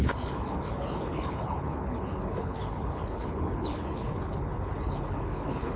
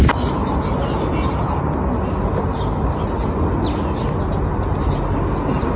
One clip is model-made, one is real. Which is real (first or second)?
second